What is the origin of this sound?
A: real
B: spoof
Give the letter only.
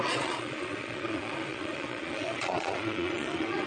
B